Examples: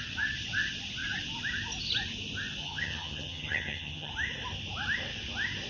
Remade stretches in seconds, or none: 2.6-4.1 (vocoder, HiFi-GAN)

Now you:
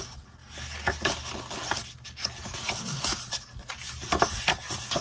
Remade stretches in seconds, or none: none

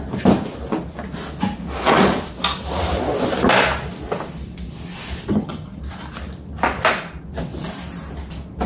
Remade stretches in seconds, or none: 5.3-5.8 (vocoder, HiFi-GAN)